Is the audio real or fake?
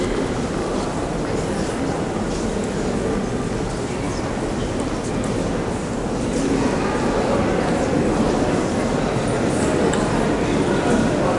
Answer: real